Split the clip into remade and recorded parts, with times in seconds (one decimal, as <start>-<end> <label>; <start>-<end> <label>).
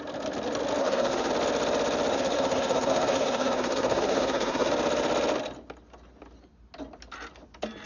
0.0-0.8 recorded; 0.8-1.3 remade; 1.3-2.1 recorded; 2.1-4.7 remade; 4.7-7.9 recorded